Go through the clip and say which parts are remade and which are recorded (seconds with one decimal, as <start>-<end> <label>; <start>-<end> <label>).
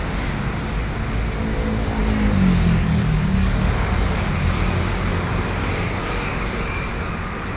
0.0-2.0 recorded; 2.0-5.3 remade; 5.3-6.0 recorded; 6.0-7.6 remade